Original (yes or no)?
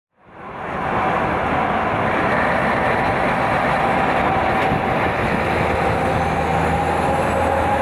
yes